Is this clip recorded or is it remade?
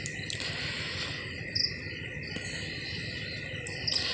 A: recorded